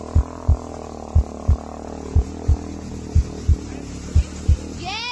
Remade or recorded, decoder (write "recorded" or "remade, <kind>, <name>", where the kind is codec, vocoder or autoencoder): recorded